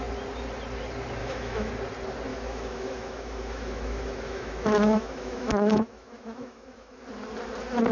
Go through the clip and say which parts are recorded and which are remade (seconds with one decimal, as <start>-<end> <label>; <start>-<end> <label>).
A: 0.0-1.2 recorded; 1.2-1.7 remade; 1.7-2.3 recorded; 2.3-7.0 remade; 7.0-7.9 recorded

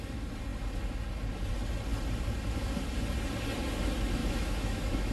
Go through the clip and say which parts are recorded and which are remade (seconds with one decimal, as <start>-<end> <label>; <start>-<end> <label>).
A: 0.0-4.2 recorded; 4.2-5.1 remade

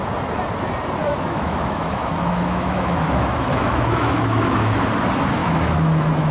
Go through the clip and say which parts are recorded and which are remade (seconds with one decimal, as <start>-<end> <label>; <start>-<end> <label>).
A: 0.0-1.0 recorded; 1.0-4.8 remade; 4.8-5.4 recorded; 5.4-6.3 remade

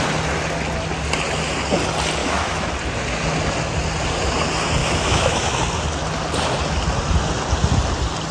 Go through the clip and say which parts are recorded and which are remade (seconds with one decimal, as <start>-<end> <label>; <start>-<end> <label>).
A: 0.0-2.2 recorded; 2.2-2.7 remade; 2.7-4.8 recorded; 4.8-5.6 remade; 5.6-8.3 recorded

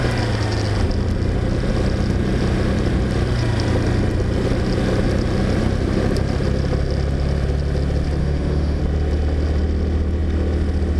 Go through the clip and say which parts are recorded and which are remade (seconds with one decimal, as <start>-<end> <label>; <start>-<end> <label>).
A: 0.0-8.2 recorded; 8.2-8.8 remade; 8.8-11.0 recorded

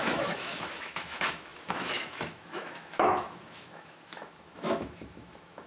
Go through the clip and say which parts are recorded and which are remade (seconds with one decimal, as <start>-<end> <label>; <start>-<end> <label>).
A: 0.0-5.7 remade

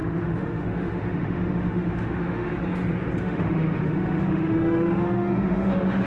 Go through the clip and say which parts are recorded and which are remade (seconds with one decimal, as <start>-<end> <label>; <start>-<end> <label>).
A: 0.0-2.5 remade; 2.5-3.2 recorded; 3.2-6.1 remade